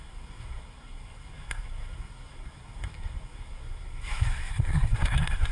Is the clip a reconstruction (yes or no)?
yes